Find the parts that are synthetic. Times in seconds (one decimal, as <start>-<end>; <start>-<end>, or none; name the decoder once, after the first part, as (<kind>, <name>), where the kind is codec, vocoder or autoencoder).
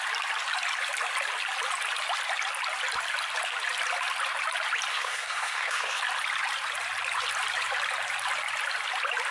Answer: 4.9-6.0 (codec, SNAC)